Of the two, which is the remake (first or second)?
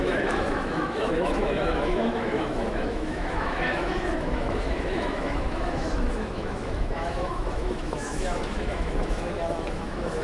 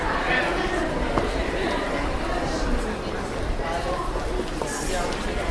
first